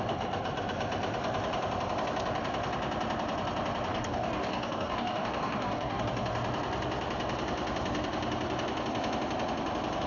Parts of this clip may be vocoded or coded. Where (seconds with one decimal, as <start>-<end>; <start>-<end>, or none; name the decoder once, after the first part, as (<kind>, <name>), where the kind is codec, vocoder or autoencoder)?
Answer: 3.9-6.0 (codec, DAC)